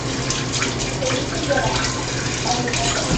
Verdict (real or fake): real